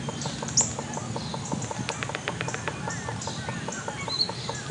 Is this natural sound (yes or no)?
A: yes